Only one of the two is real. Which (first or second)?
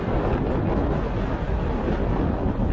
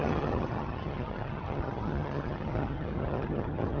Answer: first